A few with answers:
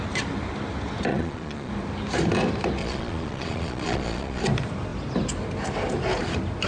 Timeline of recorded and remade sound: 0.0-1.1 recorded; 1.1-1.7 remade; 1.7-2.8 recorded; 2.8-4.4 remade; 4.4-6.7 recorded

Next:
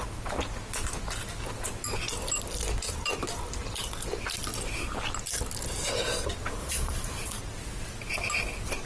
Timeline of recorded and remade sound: 0.0-6.6 recorded; 6.6-7.4 remade; 7.4-8.9 recorded

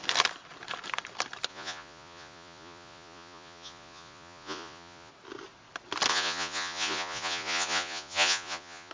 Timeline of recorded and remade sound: 0.0-1.5 recorded; 1.5-5.1 remade; 5.1-6.1 recorded; 6.1-8.9 remade

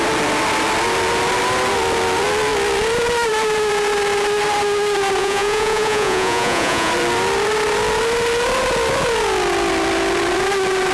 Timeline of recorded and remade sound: 0.0-5.2 recorded; 5.2-6.9 remade; 6.9-10.9 recorded

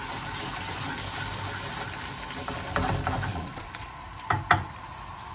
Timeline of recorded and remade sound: 0.0-3.3 recorded; 3.3-4.0 remade; 4.0-5.3 recorded

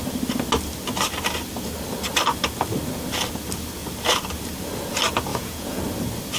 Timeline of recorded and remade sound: 0.0-5.3 recorded; 5.3-5.8 remade; 5.8-6.4 recorded

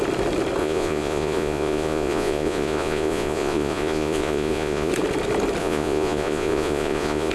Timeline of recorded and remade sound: 0.0-0.6 recorded; 0.6-4.9 remade; 4.9-5.6 recorded; 5.6-7.3 remade